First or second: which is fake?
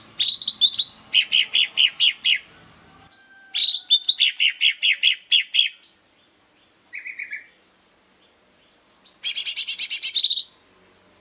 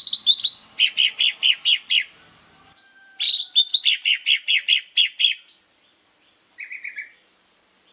second